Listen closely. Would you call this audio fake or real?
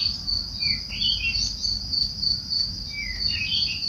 real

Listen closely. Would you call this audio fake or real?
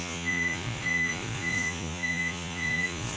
fake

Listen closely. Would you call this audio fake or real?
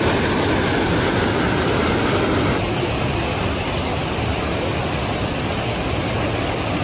real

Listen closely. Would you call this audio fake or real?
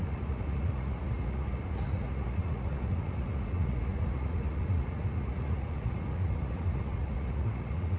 fake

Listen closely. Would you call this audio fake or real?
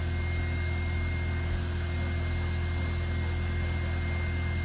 real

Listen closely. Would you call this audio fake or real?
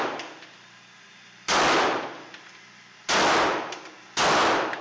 real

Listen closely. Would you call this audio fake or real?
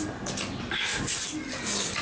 real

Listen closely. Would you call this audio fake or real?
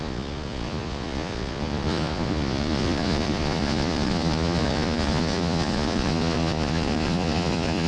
fake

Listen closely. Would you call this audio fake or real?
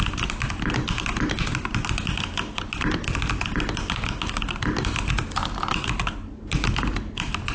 real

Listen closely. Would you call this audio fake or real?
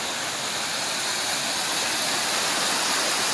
real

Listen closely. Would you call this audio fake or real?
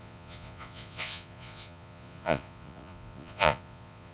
fake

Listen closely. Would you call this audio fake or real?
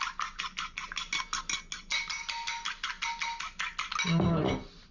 real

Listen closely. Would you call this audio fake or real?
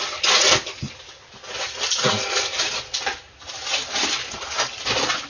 real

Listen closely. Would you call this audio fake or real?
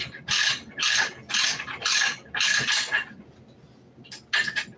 real